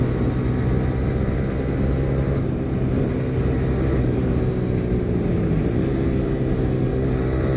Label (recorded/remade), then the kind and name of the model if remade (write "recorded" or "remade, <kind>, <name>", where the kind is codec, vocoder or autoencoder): recorded